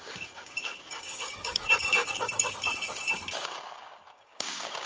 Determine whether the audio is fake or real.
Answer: fake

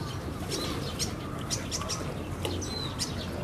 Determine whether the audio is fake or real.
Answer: real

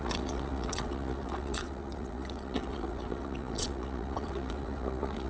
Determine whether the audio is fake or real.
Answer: fake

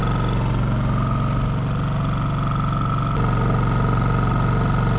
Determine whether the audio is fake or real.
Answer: real